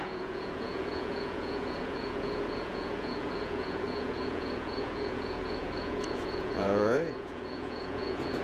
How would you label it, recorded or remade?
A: remade